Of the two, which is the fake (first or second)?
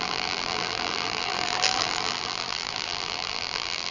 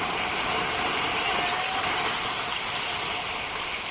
first